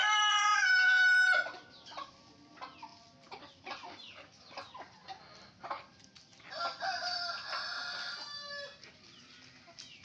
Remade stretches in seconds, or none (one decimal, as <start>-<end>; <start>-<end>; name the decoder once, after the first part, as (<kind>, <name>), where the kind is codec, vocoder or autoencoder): 0.5-2.3 (vocoder, BigVGAN v2); 2.9-7.5